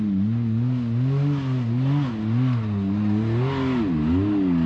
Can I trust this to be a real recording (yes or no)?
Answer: yes